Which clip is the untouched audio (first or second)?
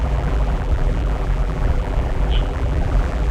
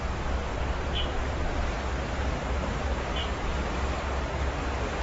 second